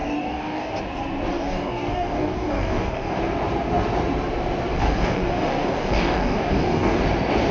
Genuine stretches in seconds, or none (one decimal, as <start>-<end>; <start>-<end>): 0.8-1.3; 3.2-4.7; 7.0-7.5